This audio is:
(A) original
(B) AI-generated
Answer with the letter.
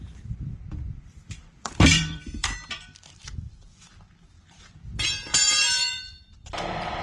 B